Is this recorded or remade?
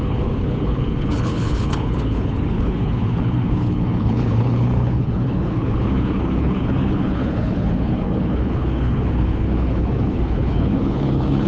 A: remade